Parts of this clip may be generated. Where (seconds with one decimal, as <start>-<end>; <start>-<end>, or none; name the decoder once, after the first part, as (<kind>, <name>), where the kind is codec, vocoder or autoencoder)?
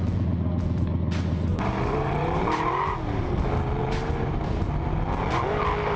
1.5-2.4 (vocoder, BigVGAN v2); 3.8-4.5